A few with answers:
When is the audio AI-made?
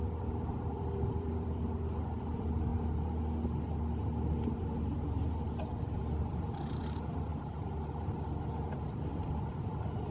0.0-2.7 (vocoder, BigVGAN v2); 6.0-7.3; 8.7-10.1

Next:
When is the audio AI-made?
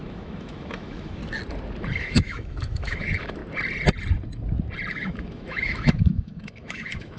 0.0-1.2 (autoencoder, DAC-VAE); 2.0-3.4; 4.9-7.2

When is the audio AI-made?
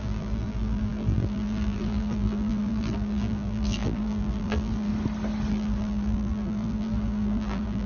0.0-4.9 (vocoder, BigVGAN v2); 5.5-7.9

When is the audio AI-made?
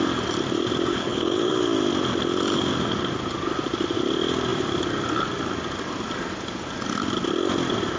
0.9-1.5 (codec, HILCodec)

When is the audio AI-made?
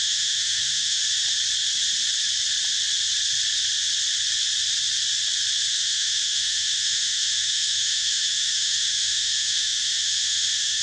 0.0-1.0 (autoencoder, DAC-VAE); 5.7-10.8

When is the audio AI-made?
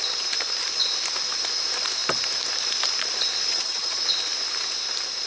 3.5-4.0 (vocoder, HiFi-GAN)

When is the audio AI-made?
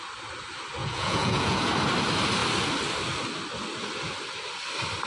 0.8-1.7 (vocoder, Vocos)